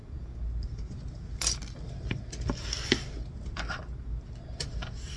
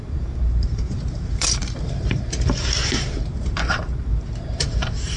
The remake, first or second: second